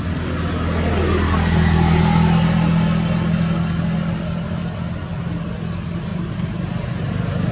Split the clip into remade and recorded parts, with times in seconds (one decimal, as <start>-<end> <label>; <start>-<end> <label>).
0.0-6.1 recorded; 6.1-6.7 remade; 6.7-7.5 recorded